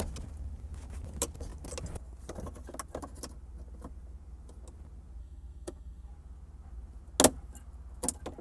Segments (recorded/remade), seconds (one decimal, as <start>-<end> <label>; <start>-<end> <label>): 0.0-5.2 recorded; 5.2-6.1 remade; 6.1-8.4 recorded